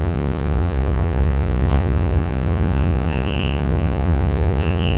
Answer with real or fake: fake